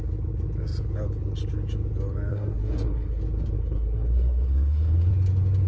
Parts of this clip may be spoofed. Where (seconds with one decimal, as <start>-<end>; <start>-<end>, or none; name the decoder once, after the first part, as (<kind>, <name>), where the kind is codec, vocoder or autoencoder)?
2.3-3.2 (codec, SNAC); 3.6-5.1